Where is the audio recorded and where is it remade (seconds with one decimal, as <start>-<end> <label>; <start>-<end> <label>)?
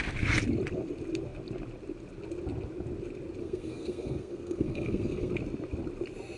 0.0-3.4 recorded; 3.4-5.3 remade; 5.3-6.4 recorded